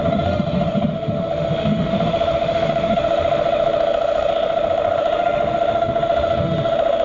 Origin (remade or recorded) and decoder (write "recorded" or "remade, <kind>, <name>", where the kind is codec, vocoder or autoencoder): remade, autoencoder, DAC-VAE